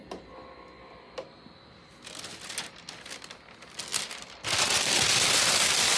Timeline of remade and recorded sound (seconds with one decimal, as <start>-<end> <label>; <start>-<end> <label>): 0.0-6.0 recorded